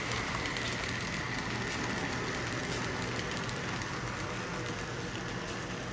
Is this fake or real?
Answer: real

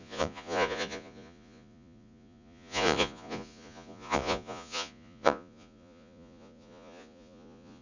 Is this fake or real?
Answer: fake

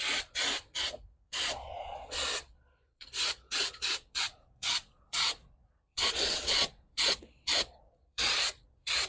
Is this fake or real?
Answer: fake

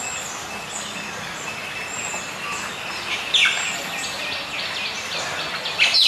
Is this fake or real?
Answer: real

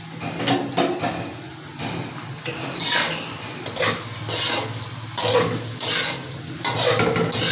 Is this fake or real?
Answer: real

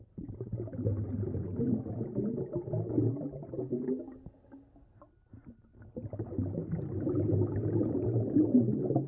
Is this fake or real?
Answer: real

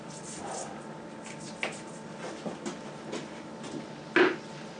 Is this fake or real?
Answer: real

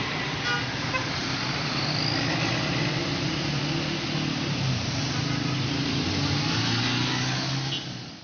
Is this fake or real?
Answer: real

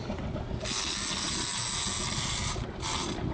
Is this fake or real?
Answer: real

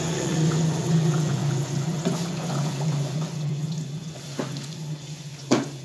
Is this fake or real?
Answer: fake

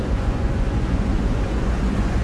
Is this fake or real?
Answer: fake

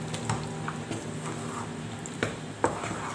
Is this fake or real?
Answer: real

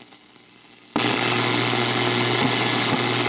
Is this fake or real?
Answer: real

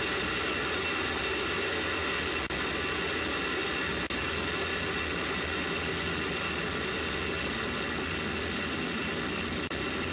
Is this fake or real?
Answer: real